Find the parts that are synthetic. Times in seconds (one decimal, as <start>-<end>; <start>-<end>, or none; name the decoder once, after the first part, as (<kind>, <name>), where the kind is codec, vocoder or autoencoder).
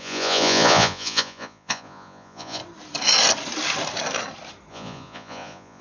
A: 0.0-2.6 (vocoder, Vocos); 4.7-5.8